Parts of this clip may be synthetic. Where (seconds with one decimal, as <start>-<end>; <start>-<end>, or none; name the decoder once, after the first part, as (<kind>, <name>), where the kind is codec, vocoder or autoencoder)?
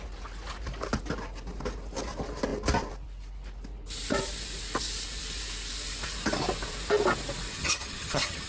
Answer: 7.5-8.5 (vocoder, HiFi-GAN)